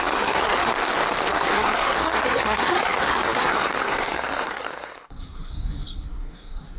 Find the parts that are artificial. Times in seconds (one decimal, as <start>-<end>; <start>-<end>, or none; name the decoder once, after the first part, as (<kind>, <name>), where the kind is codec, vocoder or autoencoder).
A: 0.0-0.7 (codec, SNAC); 1.3-6.8